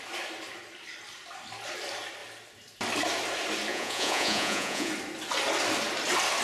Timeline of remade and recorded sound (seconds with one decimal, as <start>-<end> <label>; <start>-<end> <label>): 0.0-3.7 recorded; 3.7-4.9 remade; 4.9-6.4 recorded